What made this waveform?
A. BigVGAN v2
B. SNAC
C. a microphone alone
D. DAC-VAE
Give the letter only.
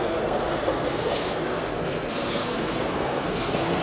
B